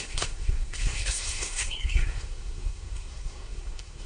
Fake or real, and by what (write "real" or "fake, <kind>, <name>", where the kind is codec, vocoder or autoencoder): fake, codec, SNAC